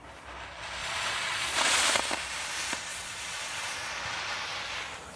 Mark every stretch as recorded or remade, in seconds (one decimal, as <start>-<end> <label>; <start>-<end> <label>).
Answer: 0.0-0.8 recorded; 0.8-1.8 remade; 1.8-2.9 recorded; 2.9-3.9 remade; 3.9-5.2 recorded